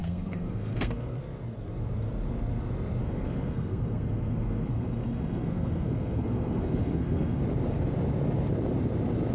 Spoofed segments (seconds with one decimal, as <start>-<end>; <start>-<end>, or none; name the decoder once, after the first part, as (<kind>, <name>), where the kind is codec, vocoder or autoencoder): 0.0-1.2 (codec, SNAC); 3.0-7.4